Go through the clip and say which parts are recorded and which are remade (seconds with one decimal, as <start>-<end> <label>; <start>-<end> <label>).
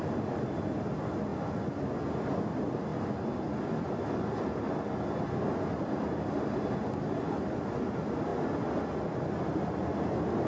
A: 0.0-10.5 recorded